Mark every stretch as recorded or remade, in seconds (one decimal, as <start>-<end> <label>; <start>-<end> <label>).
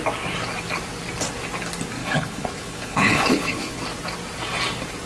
0.0-2.0 recorded; 2.0-3.8 remade; 3.8-5.1 recorded